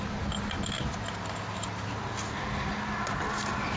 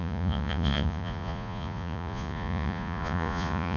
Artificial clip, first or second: second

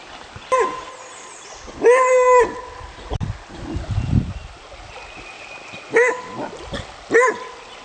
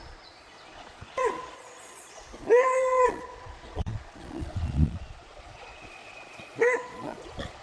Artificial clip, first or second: second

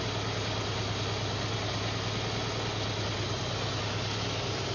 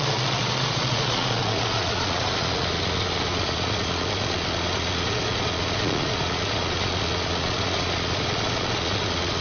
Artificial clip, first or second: second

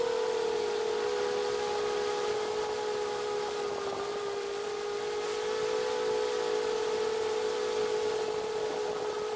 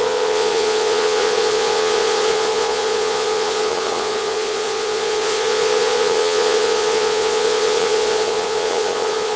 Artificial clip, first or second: second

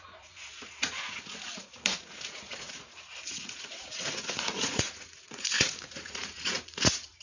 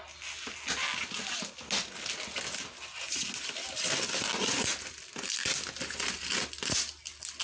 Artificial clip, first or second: first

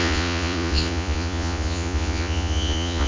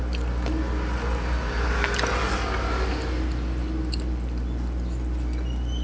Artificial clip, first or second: first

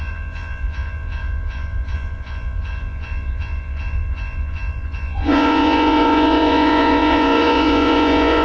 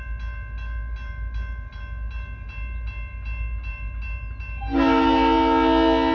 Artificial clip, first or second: first